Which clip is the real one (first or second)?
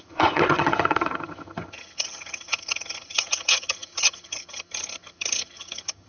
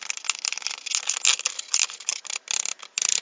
second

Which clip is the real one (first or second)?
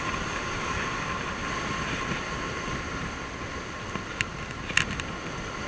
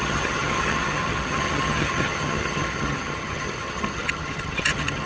first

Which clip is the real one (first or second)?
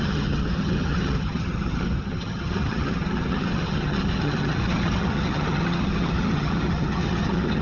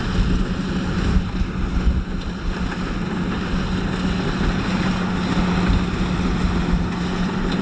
second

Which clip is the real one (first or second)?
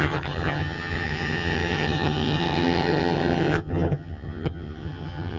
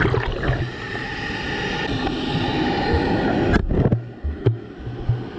second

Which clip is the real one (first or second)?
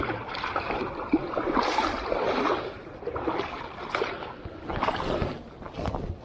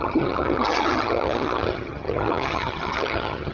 first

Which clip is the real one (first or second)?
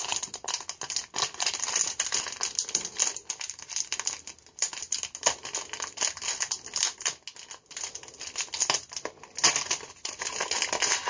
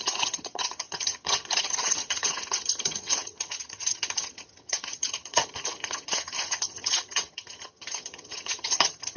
first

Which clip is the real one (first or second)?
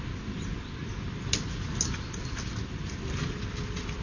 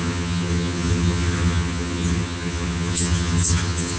first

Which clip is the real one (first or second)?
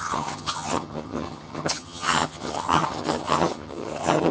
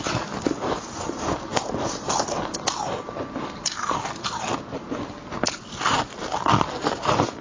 second